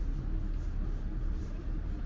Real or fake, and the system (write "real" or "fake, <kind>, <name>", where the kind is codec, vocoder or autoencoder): fake, vocoder, BigVGAN v2